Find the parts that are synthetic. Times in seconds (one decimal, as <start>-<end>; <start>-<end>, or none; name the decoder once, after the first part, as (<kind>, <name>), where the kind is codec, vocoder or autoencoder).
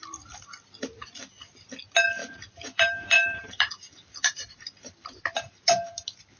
2.2-6.0 (vocoder, BigVGAN v2)